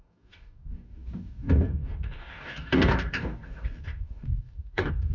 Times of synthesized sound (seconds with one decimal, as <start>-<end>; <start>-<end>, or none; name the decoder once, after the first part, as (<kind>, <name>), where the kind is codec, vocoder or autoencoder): 0.0-5.1 (codec, DAC)